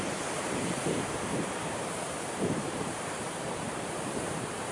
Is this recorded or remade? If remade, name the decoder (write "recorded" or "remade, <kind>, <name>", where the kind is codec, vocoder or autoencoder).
remade, vocoder, BigVGAN v2